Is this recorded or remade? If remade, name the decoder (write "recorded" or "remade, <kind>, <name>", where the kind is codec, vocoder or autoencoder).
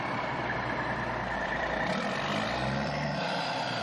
remade, vocoder, BigVGAN v2